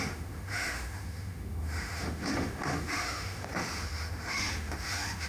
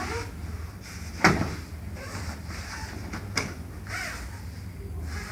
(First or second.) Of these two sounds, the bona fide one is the second